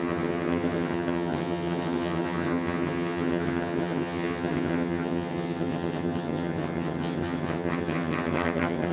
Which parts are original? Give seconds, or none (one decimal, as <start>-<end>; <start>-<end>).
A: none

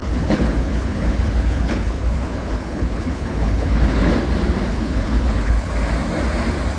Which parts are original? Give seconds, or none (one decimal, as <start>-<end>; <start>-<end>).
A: 4.1-4.7; 5.7-6.8

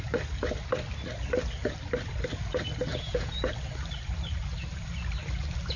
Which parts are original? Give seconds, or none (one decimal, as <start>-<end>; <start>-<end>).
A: 0.0-2.9; 3.5-5.8

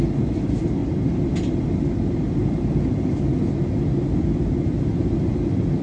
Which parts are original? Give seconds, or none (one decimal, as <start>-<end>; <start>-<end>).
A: 0.0-5.8

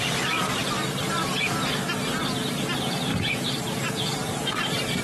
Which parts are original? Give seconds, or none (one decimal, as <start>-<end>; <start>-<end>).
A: 0.6-2.5

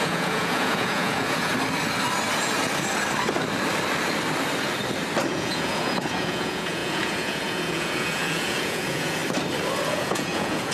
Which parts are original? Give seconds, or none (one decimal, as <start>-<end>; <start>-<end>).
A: 1.5-5.3; 9.2-9.9

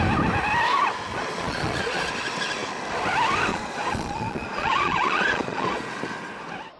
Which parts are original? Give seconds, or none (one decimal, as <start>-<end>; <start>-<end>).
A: 0.0-1.1; 2.1-3.5; 5.8-6.8

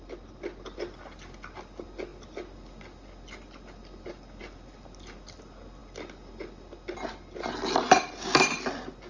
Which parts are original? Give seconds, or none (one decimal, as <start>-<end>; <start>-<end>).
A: 0.0-9.1